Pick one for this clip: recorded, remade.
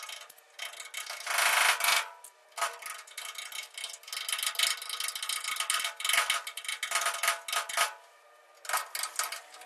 recorded